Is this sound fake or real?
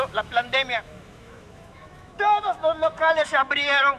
fake